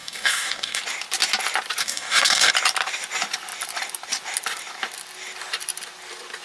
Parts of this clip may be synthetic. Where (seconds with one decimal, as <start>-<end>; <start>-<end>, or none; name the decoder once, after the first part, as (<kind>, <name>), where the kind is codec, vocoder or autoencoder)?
0.0-0.8 (codec, DAC); 1.8-2.5